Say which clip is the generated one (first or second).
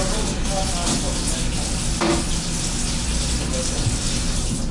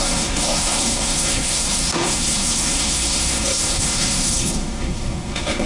second